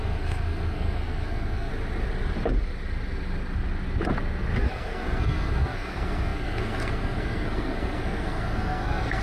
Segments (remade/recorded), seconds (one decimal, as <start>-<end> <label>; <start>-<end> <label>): 0.0-1.7 remade; 1.7-4.7 recorded; 4.7-9.2 remade